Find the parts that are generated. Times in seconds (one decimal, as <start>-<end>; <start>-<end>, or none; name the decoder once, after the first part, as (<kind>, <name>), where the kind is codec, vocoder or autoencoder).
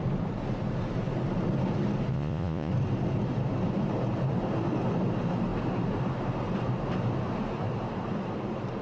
2.1-2.7 (vocoder, Vocos)